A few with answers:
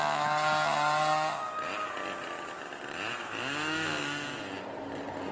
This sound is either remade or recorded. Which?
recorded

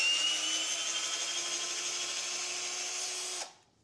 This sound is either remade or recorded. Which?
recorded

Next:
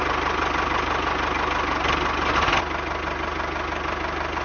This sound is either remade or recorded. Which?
recorded